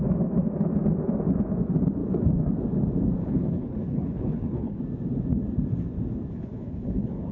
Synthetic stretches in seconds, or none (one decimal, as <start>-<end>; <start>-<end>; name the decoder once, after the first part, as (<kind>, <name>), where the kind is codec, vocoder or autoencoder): 3.2-4.8 (codec, HILCodec); 6.3-7.3